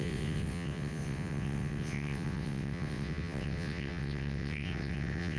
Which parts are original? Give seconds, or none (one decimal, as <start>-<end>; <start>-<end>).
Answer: none